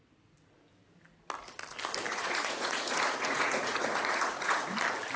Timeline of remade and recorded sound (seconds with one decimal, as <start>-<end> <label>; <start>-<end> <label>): 0.0-2.1 recorded; 2.1-4.7 remade; 4.7-5.2 recorded